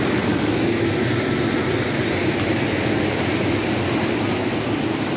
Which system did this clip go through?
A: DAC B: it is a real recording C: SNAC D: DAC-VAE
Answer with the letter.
B